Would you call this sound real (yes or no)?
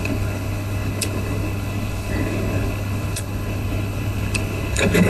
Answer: no